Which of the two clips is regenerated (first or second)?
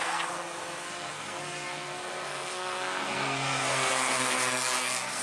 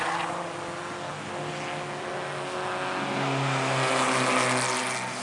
first